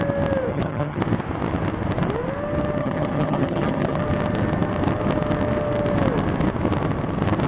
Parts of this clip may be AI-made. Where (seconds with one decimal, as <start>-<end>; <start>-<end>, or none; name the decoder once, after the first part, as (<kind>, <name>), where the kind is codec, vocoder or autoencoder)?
0.5-1.0 (vocoder, HiFi-GAN); 2.8-4.0